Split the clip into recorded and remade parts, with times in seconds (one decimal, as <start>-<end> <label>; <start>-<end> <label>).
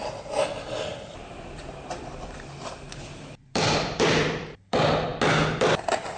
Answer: 0.0-5.1 remade; 5.1-5.6 recorded; 5.6-6.2 remade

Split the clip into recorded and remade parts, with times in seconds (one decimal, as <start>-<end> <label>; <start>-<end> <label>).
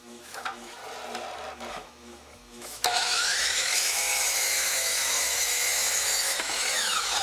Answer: 0.0-0.8 remade; 0.8-1.7 recorded; 1.7-7.2 remade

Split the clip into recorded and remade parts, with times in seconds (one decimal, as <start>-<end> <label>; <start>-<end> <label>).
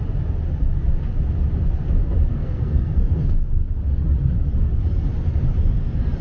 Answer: 0.0-2.3 recorded; 2.3-3.3 remade; 3.3-6.2 recorded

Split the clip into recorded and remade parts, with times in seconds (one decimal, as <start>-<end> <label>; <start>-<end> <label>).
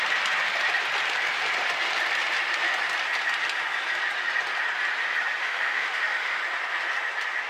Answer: 0.0-5.4 recorded; 5.4-6.4 remade; 6.4-7.5 recorded